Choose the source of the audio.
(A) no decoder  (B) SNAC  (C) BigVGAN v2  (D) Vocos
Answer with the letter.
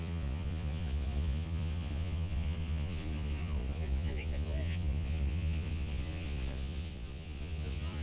D